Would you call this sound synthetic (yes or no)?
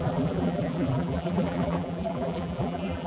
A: yes